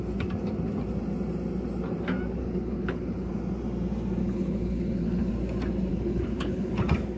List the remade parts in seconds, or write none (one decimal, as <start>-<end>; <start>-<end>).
2.4-3.3; 4.2-5.3; 5.9-6.7